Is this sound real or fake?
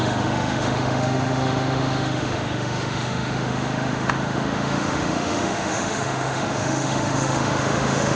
fake